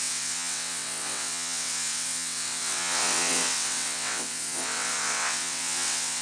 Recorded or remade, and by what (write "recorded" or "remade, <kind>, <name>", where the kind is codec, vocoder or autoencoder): remade, vocoder, WaveNeXt